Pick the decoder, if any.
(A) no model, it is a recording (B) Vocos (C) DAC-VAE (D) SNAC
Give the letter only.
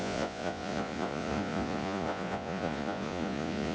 B